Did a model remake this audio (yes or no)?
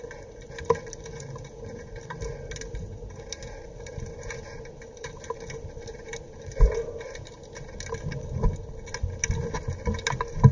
no